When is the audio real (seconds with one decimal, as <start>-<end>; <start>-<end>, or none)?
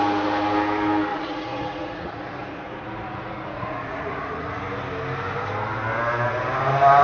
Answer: 0.0-1.1; 4.6-7.0